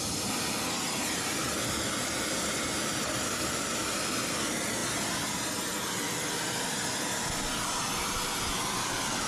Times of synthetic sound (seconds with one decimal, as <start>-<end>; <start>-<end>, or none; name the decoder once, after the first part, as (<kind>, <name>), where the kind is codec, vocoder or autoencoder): none